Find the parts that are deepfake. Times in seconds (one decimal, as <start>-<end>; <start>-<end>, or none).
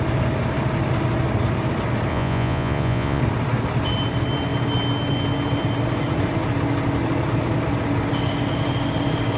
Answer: 2.1-3.2